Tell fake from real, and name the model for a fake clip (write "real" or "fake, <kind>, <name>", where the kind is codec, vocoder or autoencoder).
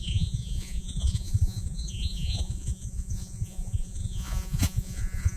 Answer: fake, vocoder, Vocos